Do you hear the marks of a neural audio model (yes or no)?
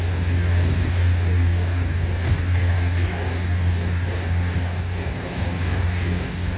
yes